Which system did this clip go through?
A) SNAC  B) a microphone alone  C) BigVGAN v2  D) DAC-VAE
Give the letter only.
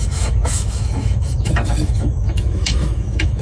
D